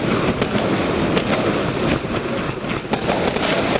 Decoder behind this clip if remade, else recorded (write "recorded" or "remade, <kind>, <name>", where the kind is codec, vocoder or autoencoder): recorded